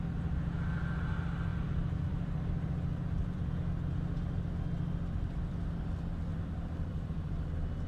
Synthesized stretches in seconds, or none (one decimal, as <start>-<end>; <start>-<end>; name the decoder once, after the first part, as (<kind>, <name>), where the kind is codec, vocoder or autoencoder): 1.5-3.5 (vocoder, BigVGAN v2); 6.3-7.5